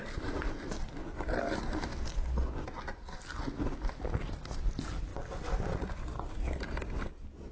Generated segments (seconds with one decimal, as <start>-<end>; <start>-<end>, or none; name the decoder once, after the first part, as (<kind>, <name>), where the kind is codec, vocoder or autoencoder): none